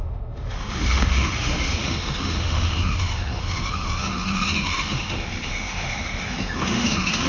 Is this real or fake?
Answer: fake